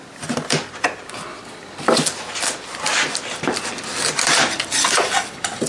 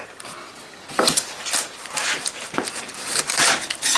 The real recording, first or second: first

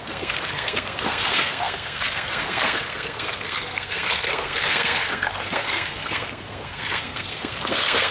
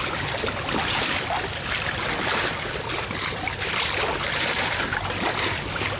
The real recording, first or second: second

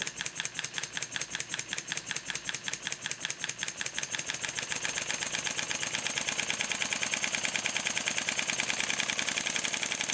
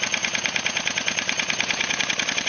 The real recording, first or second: first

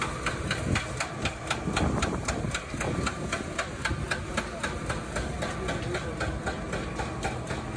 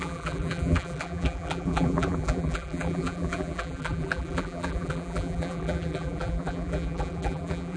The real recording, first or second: first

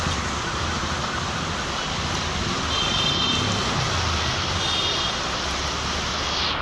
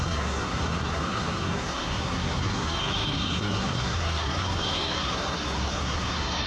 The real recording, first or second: first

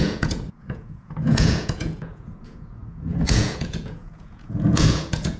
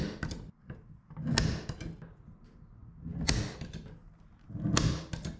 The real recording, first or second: second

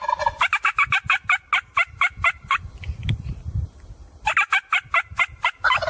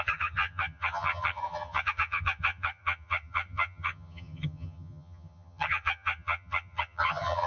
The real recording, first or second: first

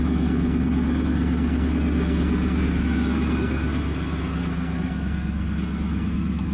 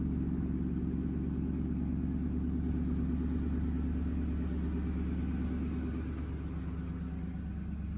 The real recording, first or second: second